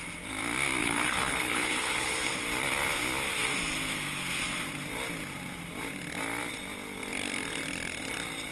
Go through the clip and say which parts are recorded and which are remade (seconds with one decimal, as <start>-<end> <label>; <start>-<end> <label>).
0.0-0.8 recorded; 0.8-2.3 remade; 2.3-8.5 recorded